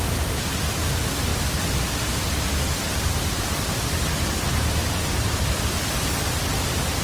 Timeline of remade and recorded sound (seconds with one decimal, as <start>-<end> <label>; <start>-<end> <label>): 0.0-7.0 recorded